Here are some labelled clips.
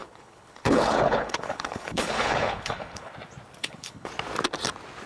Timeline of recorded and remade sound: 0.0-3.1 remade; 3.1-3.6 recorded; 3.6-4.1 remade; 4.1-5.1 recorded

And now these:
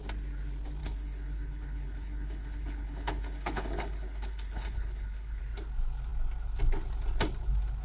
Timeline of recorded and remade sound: 0.0-0.8 recorded; 0.8-5.4 remade; 5.4-7.8 recorded

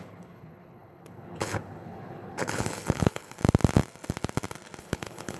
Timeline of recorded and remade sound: 0.0-3.4 remade; 3.4-4.8 recorded; 4.8-5.4 remade

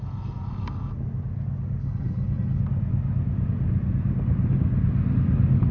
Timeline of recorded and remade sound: 0.0-1.8 recorded; 1.8-2.6 remade; 2.6-5.7 recorded

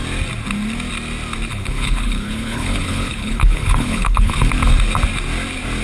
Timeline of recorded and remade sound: 0.0-1.5 recorded; 1.5-4.5 remade; 4.5-5.8 recorded